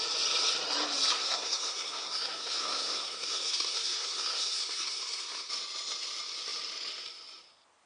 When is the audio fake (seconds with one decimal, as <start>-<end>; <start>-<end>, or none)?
1.1-5.5